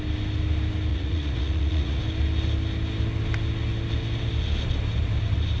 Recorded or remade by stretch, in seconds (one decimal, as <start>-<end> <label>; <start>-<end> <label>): 0.0-0.9 recorded; 0.9-2.0 remade; 2.0-5.6 recorded